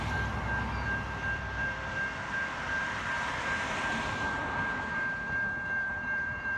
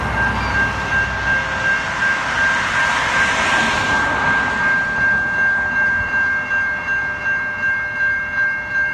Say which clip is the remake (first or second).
first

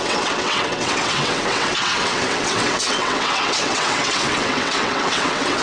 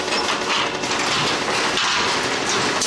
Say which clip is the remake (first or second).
first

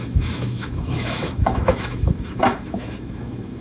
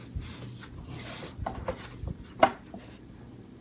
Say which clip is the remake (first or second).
first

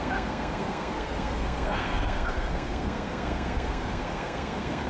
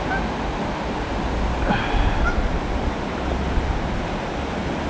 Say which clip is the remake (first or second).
first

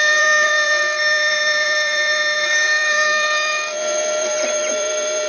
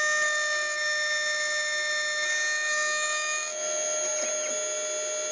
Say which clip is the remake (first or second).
first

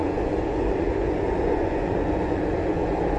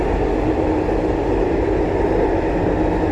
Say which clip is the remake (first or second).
first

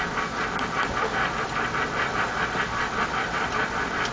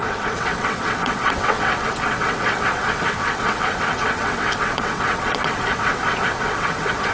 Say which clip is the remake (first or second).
second